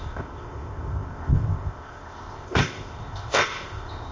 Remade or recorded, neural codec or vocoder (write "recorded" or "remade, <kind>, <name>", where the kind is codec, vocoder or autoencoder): remade, codec, ZipCodec